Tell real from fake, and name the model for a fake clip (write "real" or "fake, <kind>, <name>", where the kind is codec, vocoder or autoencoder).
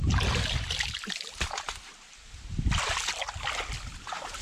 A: real